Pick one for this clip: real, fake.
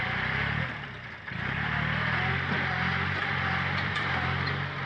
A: fake